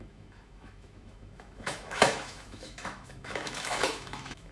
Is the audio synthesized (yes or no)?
yes